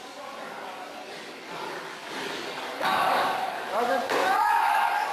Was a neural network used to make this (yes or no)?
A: yes